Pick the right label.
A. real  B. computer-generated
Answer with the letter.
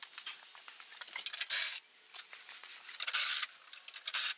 A